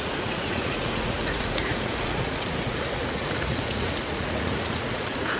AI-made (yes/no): yes